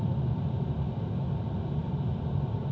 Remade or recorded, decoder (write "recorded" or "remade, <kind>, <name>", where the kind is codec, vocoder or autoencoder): recorded